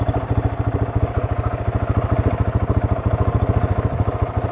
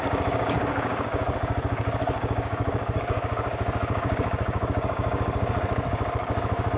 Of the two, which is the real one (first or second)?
first